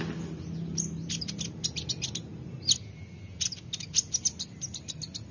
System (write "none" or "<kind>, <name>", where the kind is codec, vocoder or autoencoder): none